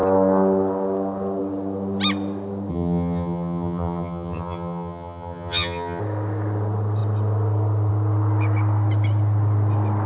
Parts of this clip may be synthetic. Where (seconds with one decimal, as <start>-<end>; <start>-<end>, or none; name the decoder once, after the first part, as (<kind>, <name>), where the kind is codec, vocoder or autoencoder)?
2.7-6.0 (vocoder, HiFi-GAN)